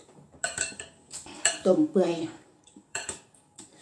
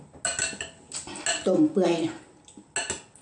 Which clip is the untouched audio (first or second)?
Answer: second